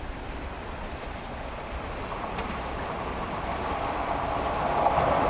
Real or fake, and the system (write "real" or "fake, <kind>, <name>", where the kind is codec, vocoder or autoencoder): fake, vocoder, BigVGAN v2